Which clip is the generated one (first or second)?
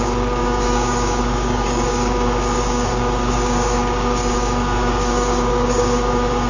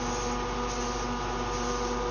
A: first